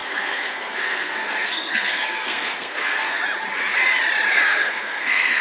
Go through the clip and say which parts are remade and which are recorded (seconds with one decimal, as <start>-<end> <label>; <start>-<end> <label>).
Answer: 0.0-3.2 remade; 3.2-4.5 recorded; 4.5-5.4 remade